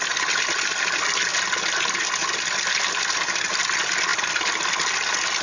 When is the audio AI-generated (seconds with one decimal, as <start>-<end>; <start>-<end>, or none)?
none